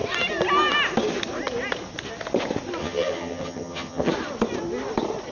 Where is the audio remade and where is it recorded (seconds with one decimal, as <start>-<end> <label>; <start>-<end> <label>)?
0.0-2.8 recorded; 2.8-4.1 remade; 4.1-5.3 recorded